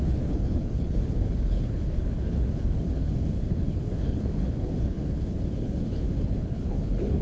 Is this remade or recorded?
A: remade